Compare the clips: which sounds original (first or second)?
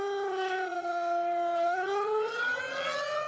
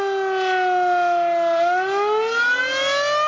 second